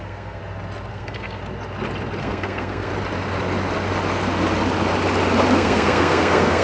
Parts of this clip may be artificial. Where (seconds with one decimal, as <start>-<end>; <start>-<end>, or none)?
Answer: 0.0-0.4; 0.9-1.4; 2.2-2.9; 5.5-6.6